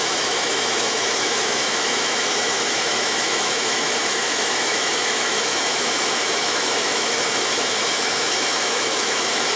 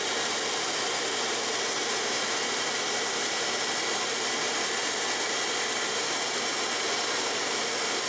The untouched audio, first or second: second